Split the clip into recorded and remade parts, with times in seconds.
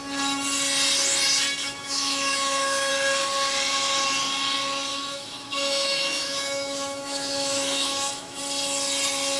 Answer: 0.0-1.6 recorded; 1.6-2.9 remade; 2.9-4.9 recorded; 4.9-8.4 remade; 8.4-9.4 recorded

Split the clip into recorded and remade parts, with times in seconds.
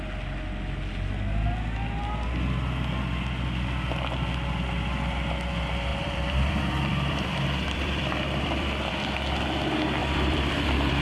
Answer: 0.0-5.9 recorded; 5.9-8.9 remade; 8.9-10.0 recorded; 10.0-11.0 remade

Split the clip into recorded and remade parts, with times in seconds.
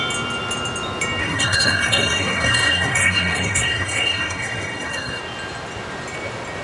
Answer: 0.0-1.2 recorded; 1.2-5.2 remade; 5.2-6.6 recorded